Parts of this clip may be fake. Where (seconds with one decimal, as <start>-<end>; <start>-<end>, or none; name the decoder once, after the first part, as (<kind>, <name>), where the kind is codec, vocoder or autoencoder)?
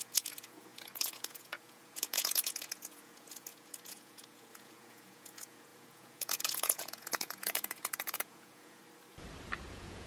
0.0-8.8 (vocoder, Vocos); 9.7-10.1